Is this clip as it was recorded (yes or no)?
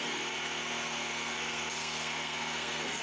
no